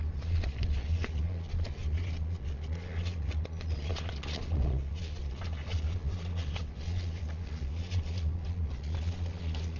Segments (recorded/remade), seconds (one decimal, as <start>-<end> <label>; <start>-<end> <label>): 0.0-9.8 remade